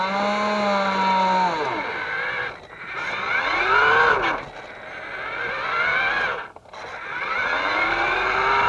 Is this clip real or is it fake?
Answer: real